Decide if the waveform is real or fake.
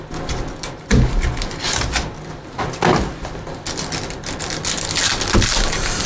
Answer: real